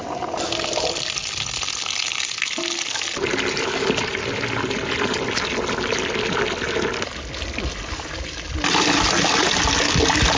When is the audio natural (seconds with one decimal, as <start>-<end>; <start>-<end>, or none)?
0.0-10.4

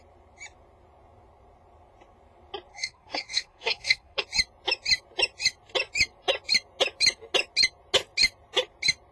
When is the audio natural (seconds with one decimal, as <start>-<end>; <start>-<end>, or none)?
0.0-2.7; 4.2-9.1

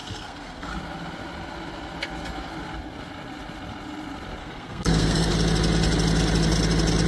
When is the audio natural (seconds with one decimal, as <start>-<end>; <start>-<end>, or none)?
0.7-4.4; 5.3-7.1

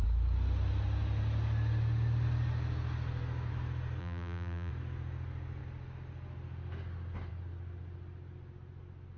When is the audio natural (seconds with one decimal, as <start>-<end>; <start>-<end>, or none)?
0.0-4.0; 4.7-9.2

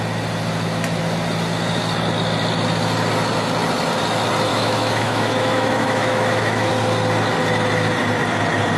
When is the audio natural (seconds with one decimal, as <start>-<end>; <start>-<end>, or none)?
0.0-4.5; 6.7-8.8

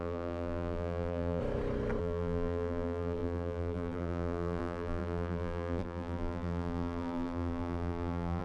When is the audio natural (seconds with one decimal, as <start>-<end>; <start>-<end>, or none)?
1.4-2.0

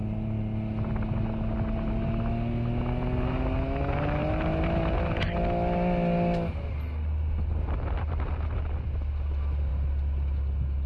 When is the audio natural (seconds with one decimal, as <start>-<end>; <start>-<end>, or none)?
0.0-10.9

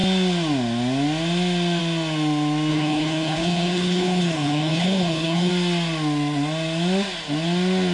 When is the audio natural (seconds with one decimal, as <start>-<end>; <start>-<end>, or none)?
0.0-2.7; 5.5-7.9